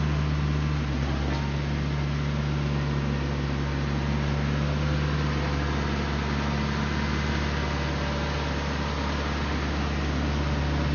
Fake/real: real